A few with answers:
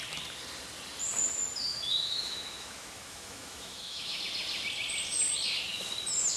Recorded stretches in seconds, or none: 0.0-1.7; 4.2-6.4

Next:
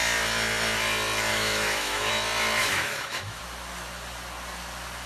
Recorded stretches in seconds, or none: 0.0-1.3; 2.1-2.6; 3.4-5.1

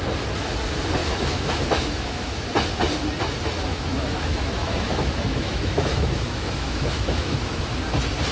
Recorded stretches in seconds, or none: 0.0-1.0; 2.5-3.7; 7.6-8.3

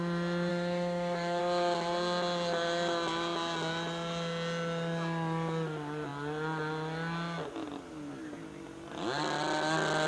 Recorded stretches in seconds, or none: 0.0-0.5; 1.4-10.1